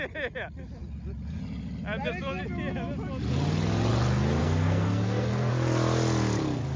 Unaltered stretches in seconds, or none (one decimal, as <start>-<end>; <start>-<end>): 0.0-4.4; 5.5-6.8